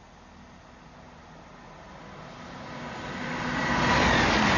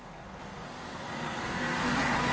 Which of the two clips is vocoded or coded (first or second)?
second